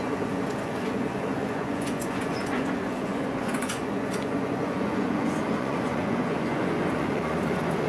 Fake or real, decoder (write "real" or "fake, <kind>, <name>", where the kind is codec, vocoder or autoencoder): fake, vocoder, Vocos